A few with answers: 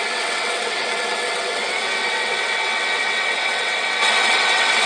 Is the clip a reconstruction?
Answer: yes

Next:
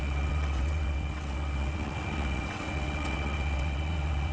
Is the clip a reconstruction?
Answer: yes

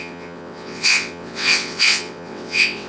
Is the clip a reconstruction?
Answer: yes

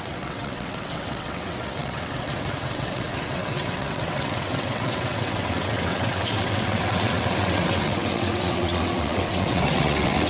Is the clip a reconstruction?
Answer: yes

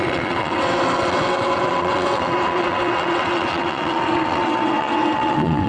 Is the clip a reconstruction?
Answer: yes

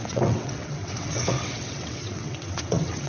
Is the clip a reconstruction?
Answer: yes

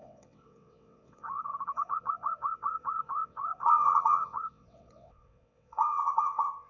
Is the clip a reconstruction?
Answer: yes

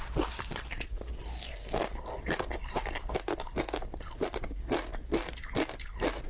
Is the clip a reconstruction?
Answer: no